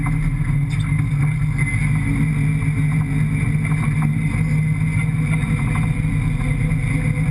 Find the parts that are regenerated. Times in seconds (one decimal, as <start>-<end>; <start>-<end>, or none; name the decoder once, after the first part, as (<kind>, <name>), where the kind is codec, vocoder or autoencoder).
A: none